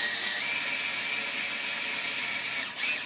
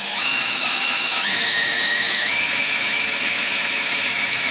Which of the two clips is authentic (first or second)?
first